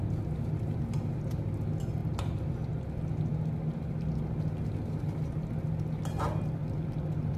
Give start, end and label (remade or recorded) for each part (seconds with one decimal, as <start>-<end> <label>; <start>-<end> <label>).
0.0-7.4 recorded